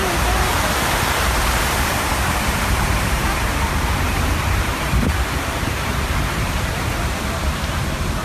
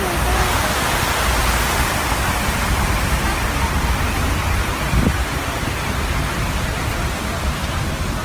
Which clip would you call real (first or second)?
second